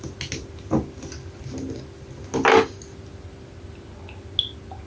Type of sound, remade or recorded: recorded